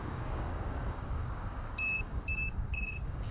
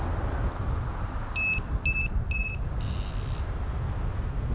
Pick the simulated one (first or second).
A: first